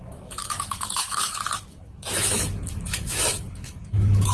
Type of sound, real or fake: fake